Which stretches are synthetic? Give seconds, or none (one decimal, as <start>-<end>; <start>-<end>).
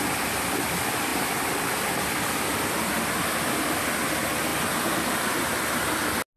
none